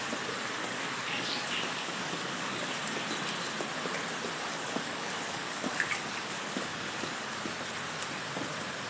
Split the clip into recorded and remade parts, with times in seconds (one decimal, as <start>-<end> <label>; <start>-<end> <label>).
0.0-0.6 recorded; 0.6-2.7 remade; 2.7-4.5 recorded; 4.5-7.4 remade; 7.4-8.9 recorded